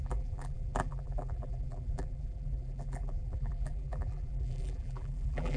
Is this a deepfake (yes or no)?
yes